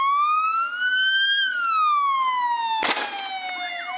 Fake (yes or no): no